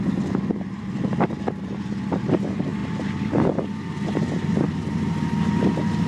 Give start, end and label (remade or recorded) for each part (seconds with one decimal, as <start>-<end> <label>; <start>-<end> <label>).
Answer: 0.0-6.1 recorded